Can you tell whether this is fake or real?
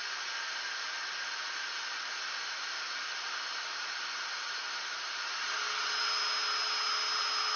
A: real